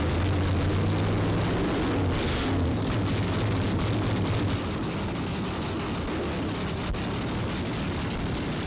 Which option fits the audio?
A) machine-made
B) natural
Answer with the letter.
B